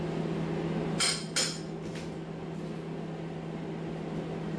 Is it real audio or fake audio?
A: real